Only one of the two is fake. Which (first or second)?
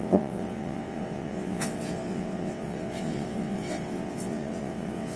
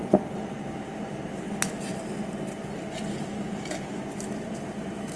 first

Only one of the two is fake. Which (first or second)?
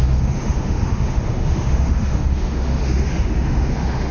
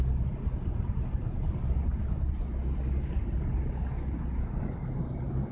first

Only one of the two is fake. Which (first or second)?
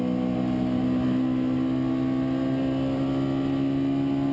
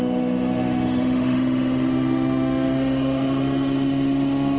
second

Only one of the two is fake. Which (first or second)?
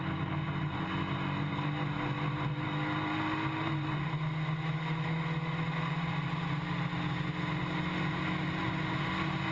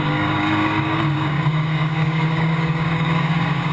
second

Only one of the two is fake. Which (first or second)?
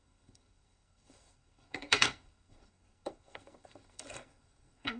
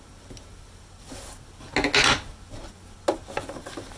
first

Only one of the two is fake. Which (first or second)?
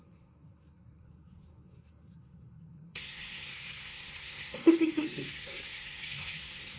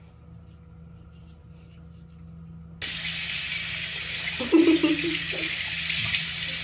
first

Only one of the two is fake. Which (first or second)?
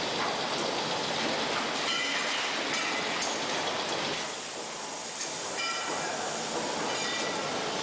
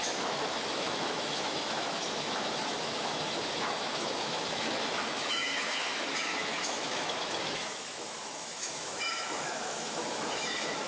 second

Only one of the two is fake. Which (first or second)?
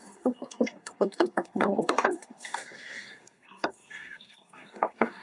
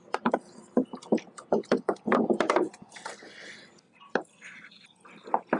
first